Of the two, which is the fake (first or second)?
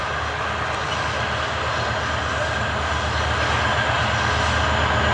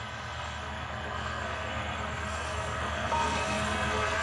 second